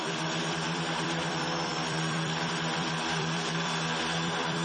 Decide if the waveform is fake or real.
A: fake